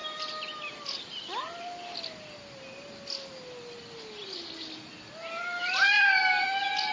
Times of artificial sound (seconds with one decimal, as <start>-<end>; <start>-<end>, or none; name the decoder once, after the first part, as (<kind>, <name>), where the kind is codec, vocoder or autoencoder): none